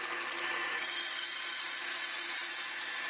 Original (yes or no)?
yes